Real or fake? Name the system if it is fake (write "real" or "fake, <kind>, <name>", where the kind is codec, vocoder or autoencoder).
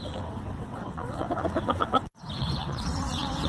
fake, vocoder, WaveNeXt